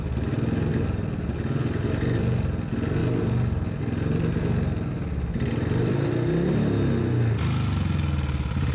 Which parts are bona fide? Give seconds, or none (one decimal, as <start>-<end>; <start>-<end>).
0.0-8.7